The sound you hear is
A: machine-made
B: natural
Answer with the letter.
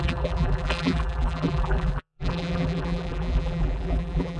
A